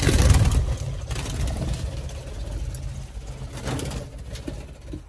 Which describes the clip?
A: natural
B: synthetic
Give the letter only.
A